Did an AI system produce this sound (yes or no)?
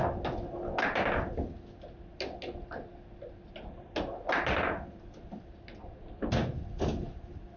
no